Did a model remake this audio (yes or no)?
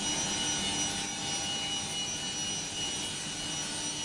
no